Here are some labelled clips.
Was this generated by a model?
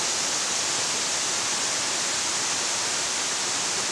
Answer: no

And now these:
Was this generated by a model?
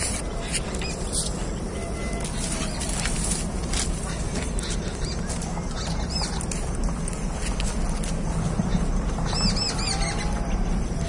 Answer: no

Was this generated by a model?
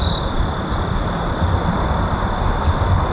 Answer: no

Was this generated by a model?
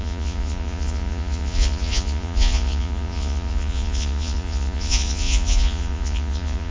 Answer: yes